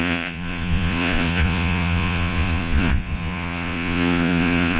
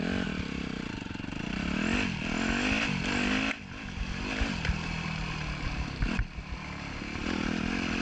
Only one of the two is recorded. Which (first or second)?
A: second